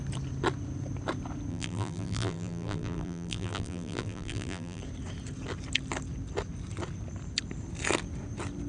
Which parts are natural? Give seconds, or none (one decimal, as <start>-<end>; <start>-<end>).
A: 0.0-1.5; 4.8-8.7